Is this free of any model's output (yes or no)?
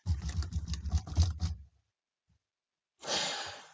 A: yes